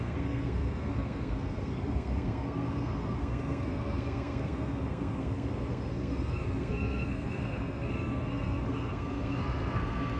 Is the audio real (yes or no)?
no